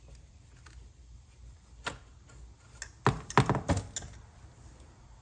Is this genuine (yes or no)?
yes